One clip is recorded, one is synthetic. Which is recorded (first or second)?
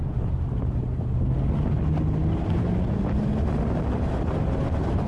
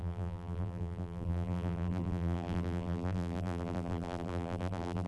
first